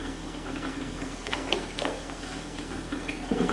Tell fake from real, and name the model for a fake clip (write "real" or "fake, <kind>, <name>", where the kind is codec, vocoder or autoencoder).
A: fake, codec, SNAC